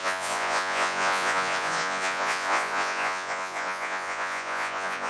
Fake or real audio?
fake